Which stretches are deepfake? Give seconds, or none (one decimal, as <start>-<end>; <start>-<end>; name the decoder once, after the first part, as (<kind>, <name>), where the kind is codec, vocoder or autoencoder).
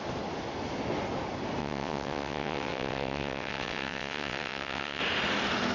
1.6-5.0 (vocoder, WaveNeXt)